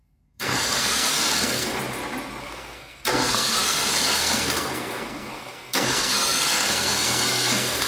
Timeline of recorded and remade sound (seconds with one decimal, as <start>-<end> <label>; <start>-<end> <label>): 0.0-1.7 remade; 1.7-2.4 recorded; 2.4-7.9 remade